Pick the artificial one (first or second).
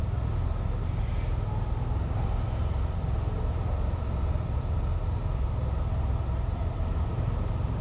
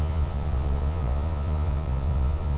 second